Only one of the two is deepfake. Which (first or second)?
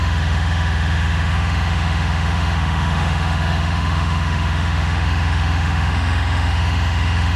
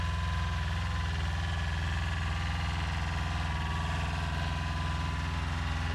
first